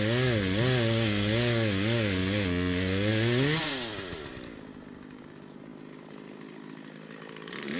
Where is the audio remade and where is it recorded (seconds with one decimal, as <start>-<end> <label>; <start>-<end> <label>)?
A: 0.0-7.8 recorded